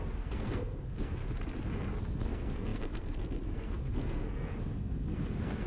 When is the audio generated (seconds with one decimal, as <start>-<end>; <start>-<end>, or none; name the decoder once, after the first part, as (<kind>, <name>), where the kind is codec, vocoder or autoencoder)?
0.0-1.2 (codec, SNAC); 2.0-5.7

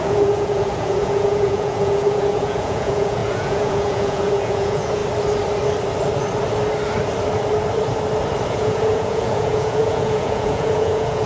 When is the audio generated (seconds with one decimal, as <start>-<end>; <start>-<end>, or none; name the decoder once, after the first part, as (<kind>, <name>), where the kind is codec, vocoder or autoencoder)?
0.0-5.0 (vocoder, Vocos); 8.5-11.3

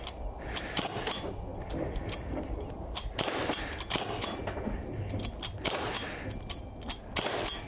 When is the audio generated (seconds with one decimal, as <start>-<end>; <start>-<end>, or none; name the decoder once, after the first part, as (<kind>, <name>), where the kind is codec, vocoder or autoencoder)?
none